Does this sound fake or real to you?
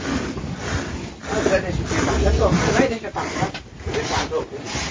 real